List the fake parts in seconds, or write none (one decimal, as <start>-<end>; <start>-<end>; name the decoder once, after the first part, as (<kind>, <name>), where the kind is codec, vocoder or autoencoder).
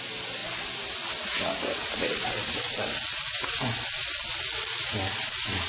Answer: none